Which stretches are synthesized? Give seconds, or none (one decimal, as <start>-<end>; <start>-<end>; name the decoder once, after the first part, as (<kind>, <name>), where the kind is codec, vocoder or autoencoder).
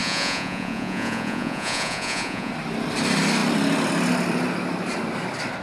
0.0-2.5 (vocoder, Vocos)